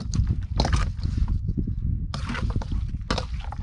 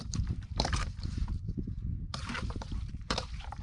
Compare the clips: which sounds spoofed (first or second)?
second